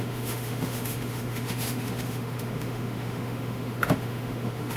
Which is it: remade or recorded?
remade